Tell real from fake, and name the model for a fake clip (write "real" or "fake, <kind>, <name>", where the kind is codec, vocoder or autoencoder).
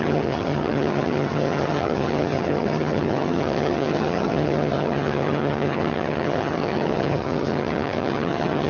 fake, vocoder, HiFi-GAN